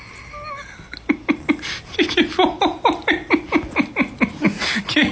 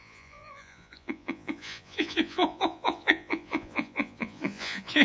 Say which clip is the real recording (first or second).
first